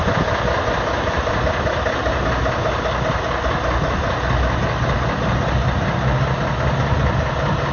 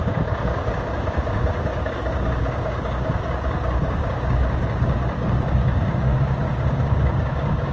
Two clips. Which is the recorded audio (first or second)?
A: first